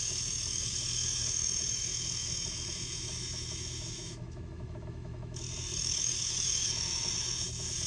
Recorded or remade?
remade